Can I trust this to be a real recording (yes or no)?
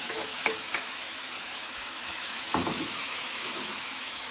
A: no